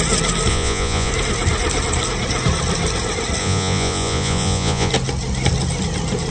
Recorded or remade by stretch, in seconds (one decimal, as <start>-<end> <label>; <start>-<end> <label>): 0.0-0.5 recorded; 0.5-1.1 remade; 1.1-3.4 recorded; 3.4-4.9 remade; 4.9-6.3 recorded